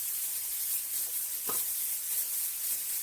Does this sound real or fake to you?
fake